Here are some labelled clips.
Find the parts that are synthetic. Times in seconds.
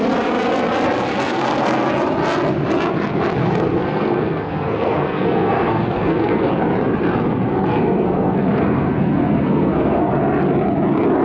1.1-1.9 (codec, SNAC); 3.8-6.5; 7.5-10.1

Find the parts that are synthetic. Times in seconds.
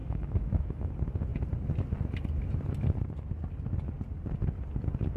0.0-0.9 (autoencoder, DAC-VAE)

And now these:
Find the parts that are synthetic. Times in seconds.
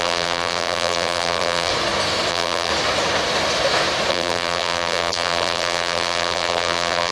0.0-1.7 (vocoder, BigVGAN v2); 2.3-2.7; 4.1-7.1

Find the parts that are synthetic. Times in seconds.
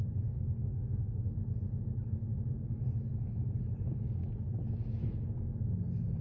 0.7-1.3 (autoencoder, DAC-VAE)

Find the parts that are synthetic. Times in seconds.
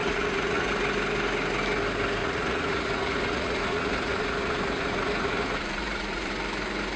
0.0-0.7 (vocoder, Vocos); 2.2-6.3